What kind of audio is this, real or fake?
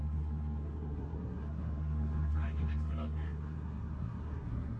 fake